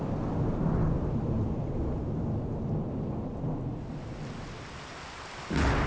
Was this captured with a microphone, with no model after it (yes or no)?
yes